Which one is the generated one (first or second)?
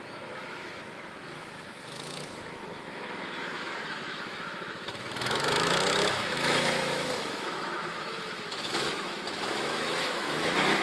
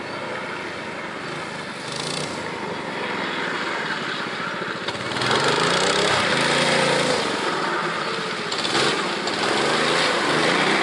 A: first